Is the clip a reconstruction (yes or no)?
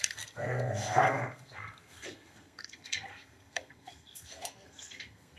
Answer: yes